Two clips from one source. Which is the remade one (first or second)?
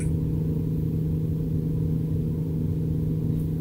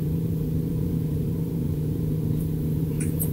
second